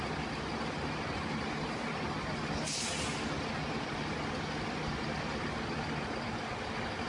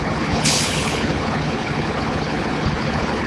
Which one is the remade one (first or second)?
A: second